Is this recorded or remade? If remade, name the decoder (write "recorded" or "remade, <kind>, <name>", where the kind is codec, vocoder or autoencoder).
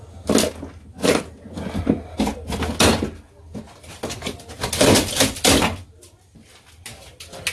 recorded